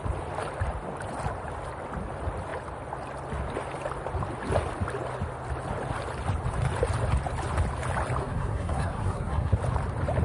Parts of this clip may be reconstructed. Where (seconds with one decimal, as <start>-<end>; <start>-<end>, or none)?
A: 8.2-9.6